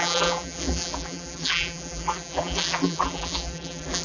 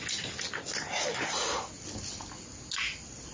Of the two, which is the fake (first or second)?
first